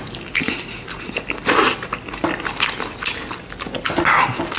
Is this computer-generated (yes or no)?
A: no